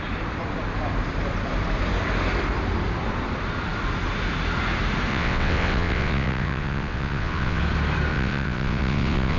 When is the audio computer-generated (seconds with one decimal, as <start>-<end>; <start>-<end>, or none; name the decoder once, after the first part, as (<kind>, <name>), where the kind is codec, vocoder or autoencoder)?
5.1-7.6 (vocoder, WaveNeXt); 8.1-9.4